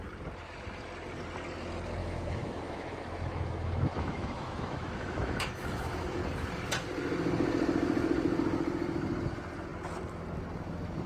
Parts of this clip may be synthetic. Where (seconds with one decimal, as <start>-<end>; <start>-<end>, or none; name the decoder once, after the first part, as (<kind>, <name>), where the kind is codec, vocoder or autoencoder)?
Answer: 2.0-6.2 (autoencoder, DAC-VAE)